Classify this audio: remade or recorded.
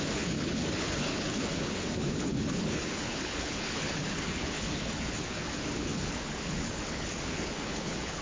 remade